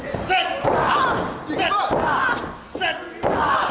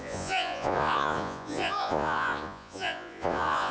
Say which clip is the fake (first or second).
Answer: second